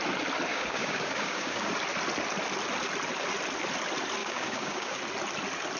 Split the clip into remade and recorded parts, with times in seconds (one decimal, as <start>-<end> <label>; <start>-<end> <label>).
0.0-0.5 recorded; 0.5-1.7 remade; 1.7-4.2 recorded; 4.2-5.0 remade; 5.0-5.8 recorded